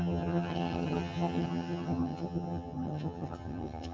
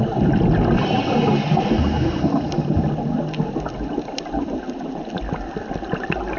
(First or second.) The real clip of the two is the second